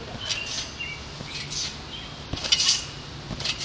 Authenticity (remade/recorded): recorded